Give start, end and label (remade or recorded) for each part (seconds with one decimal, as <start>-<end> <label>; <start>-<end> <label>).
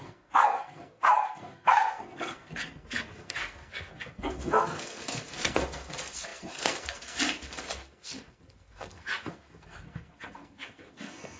0.0-11.4 remade